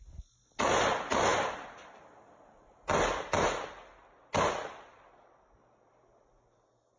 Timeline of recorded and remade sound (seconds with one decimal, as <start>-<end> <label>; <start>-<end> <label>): 0.0-7.0 recorded